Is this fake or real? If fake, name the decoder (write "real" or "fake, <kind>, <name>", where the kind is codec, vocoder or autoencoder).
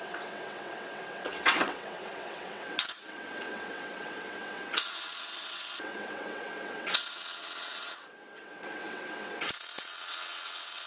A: fake, vocoder, WaveNeXt